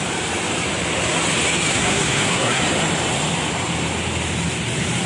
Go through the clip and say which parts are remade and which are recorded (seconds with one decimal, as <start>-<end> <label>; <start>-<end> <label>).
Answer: 0.0-1.7 recorded; 1.7-2.6 remade; 2.6-5.1 recorded